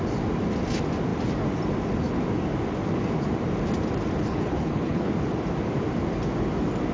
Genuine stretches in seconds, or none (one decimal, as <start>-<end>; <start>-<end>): 0.0-4.3; 5.1-6.9